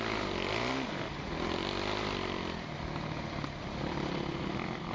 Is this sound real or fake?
real